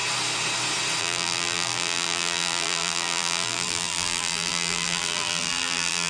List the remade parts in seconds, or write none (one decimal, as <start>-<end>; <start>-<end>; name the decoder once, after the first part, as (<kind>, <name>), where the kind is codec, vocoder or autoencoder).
1.0-6.1 (vocoder, BigVGAN v2)